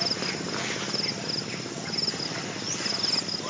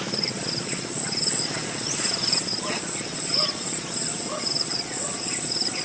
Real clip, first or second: first